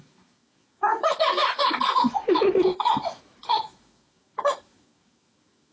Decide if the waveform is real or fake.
fake